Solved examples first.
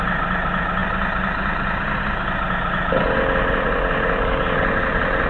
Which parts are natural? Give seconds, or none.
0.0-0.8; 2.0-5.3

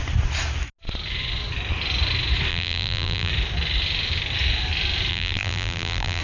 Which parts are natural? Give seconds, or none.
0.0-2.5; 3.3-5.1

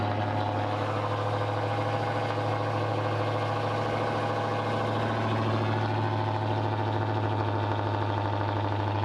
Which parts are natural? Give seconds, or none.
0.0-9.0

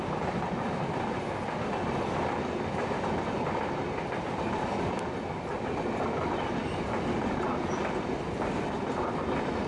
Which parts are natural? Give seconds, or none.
0.0-9.7

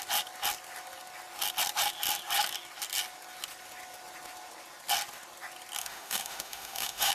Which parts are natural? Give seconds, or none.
0.0-5.8